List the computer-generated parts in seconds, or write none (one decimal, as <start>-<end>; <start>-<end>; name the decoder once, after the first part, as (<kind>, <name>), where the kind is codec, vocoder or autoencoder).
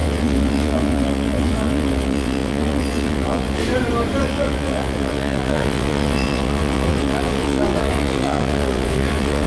0.0-3.6 (vocoder, WaveNeXt); 4.2-9.5